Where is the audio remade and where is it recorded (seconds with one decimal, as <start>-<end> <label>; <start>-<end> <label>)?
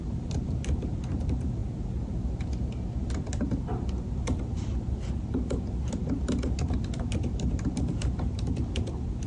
0.0-1.6 remade; 1.6-6.7 recorded; 6.7-9.3 remade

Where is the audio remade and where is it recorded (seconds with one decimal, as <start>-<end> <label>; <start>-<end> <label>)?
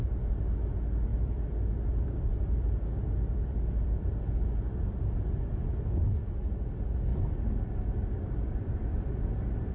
0.0-1.1 recorded; 1.1-5.0 remade; 5.0-8.9 recorded; 8.9-9.7 remade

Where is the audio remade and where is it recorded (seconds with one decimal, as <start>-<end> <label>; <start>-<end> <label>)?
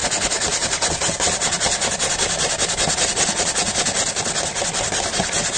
0.0-5.6 recorded